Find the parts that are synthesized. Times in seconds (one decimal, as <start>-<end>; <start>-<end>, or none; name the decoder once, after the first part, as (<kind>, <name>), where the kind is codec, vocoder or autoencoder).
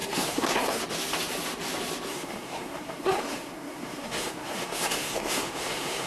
0.0-0.8 (codec, SNAC); 2.1-6.1